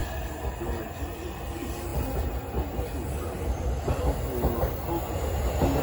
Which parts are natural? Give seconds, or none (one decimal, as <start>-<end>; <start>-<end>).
0.0-5.8